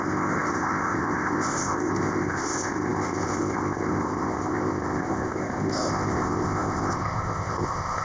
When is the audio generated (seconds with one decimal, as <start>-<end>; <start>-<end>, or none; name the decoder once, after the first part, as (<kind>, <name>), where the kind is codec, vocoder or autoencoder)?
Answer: 0.0-8.0 (codec, ZipCodec)